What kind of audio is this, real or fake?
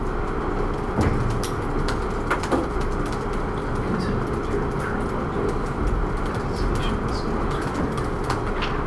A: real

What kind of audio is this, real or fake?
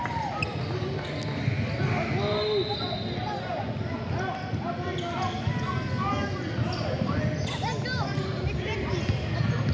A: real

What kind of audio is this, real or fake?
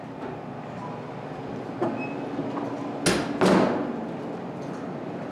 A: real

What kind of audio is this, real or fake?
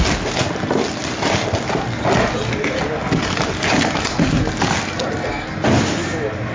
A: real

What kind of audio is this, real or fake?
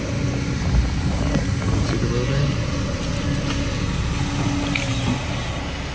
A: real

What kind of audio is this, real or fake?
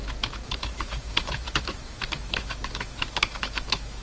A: fake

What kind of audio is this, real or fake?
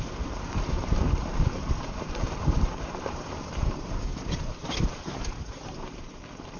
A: fake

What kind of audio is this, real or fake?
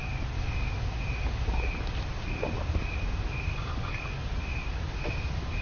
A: real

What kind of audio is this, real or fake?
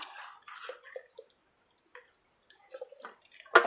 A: real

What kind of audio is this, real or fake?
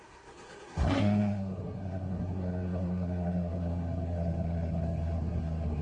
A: fake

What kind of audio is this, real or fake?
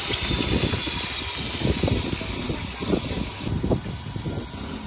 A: real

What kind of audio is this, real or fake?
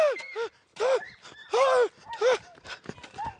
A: real